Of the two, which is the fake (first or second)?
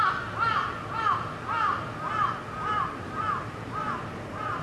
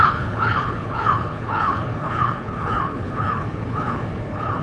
second